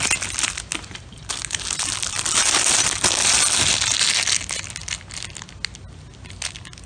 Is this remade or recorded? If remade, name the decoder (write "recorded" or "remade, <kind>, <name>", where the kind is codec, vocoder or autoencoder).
recorded